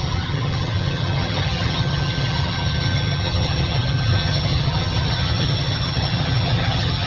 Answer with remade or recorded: remade